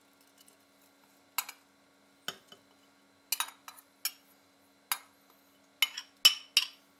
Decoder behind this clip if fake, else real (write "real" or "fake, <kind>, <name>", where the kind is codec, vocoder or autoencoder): real